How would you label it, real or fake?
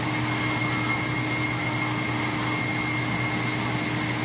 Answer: real